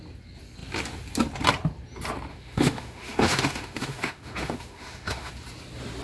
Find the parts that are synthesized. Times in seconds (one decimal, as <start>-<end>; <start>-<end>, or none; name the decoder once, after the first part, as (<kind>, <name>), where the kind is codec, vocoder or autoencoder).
2.3-5.3 (autoencoder, DAC-VAE)